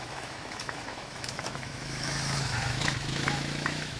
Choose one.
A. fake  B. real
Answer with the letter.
A